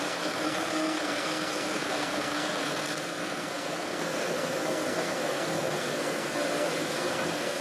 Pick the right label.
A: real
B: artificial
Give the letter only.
B